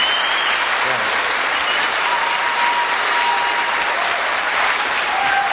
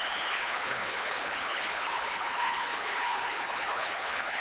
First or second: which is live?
first